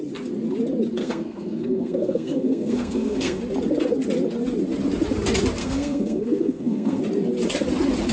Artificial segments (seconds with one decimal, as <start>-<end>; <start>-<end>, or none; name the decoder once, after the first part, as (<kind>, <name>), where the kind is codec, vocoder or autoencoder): 1.0-3.4 (codec, SNAC); 5.6-7.0